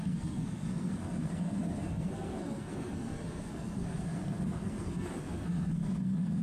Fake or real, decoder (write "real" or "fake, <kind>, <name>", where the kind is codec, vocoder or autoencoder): fake, codec, SNAC